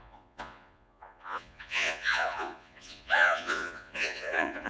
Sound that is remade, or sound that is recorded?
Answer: remade